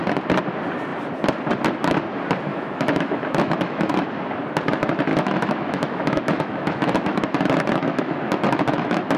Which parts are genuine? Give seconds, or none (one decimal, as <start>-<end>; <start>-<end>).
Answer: 0.0-2.5; 3.9-5.1; 7.2-7.8